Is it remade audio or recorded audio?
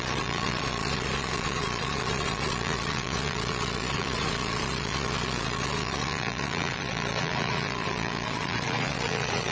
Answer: remade